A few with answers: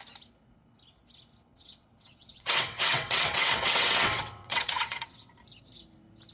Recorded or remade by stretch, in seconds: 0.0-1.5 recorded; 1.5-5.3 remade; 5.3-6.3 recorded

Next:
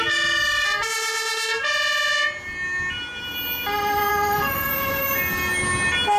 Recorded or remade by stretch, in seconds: 0.0-4.1 recorded; 4.1-4.7 remade; 4.7-6.2 recorded

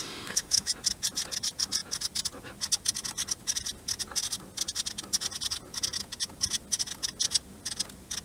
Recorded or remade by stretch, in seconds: 0.0-0.7 remade; 0.7-8.2 recorded

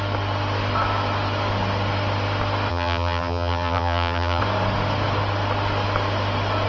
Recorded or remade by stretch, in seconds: 0.0-2.7 recorded; 2.7-4.4 remade; 4.4-6.7 recorded

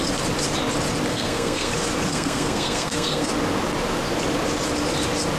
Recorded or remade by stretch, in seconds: 0.0-1.1 recorded; 1.1-1.7 remade; 1.7-2.1 recorded; 2.1-3.3 remade; 3.3-5.4 recorded